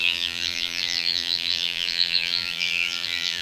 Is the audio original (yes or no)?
no